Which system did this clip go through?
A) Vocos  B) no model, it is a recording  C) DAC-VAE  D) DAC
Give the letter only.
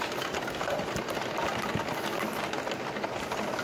B